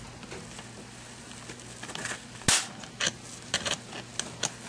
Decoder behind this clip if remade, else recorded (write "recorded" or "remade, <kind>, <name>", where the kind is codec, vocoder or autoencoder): recorded